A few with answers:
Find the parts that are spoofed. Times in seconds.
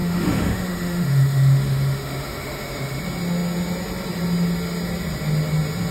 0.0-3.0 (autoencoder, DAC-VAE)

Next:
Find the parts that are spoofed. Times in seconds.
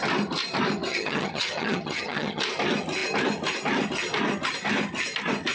0.9-2.4 (vocoder, HiFi-GAN)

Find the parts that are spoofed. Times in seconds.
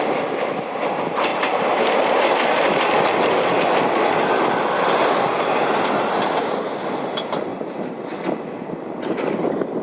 none